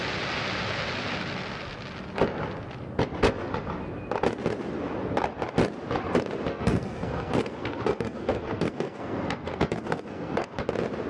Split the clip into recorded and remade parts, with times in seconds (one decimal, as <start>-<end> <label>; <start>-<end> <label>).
0.0-6.5 recorded; 6.5-10.6 remade; 10.6-11.1 recorded